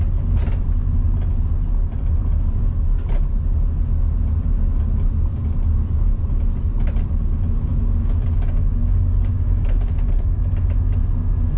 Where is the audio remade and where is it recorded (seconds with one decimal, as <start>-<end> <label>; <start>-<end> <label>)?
0.0-7.7 recorded; 7.7-10.4 remade; 10.4-11.6 recorded